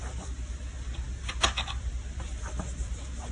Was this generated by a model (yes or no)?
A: no